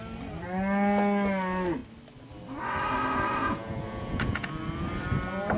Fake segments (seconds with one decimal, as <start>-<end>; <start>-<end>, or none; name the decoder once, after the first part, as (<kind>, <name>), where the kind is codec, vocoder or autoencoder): 3.4-4.5 (vocoder, Vocos)